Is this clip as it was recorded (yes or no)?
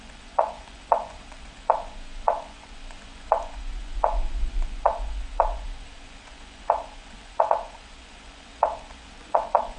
no